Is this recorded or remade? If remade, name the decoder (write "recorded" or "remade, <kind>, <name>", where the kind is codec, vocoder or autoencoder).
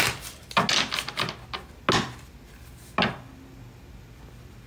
recorded